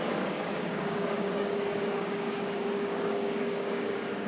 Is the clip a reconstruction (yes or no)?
yes